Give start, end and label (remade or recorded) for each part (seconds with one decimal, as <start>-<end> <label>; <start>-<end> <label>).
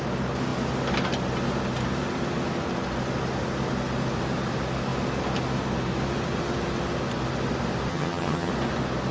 0.0-7.9 recorded; 7.9-8.5 remade; 8.5-9.1 recorded